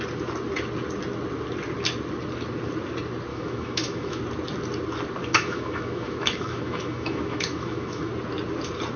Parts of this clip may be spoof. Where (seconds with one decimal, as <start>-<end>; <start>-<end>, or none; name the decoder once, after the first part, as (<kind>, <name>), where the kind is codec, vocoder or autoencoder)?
3.3-4.2 (autoencoder, DAC-VAE); 5.2-8.1